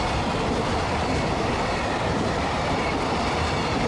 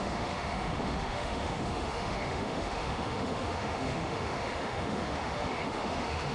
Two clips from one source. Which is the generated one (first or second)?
second